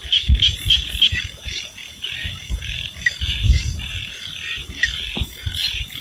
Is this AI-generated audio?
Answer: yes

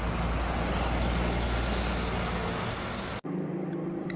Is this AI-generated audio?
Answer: no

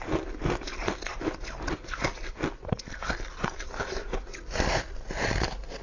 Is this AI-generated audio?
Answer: no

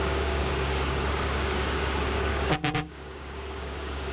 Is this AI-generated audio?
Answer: yes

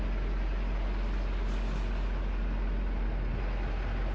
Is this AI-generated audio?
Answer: no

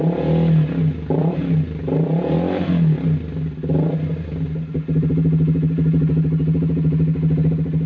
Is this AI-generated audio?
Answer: no